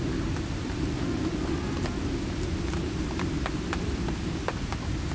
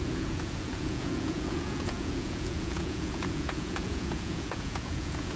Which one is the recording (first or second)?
first